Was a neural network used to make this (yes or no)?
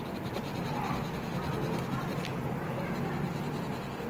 no